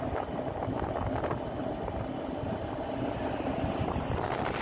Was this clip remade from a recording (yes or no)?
no